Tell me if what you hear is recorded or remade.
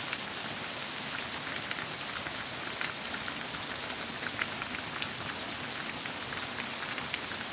recorded